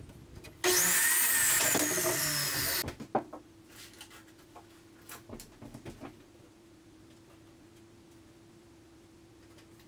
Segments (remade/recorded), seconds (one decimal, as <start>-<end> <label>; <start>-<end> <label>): 0.0-9.9 recorded